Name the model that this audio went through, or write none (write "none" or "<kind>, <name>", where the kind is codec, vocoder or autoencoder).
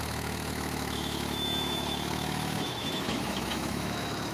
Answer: autoencoder, DAC-VAE